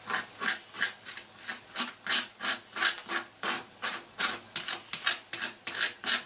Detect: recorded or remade recorded